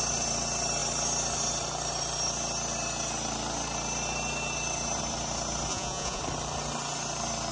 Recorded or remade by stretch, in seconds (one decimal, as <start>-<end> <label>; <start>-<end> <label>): 0.0-5.7 recorded; 5.7-6.2 remade; 6.2-7.5 recorded